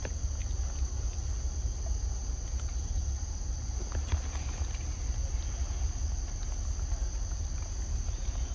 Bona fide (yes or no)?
yes